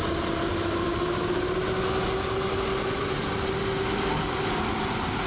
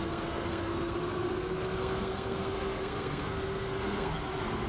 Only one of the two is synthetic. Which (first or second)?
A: second